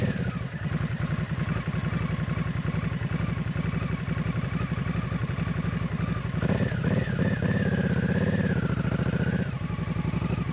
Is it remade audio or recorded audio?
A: recorded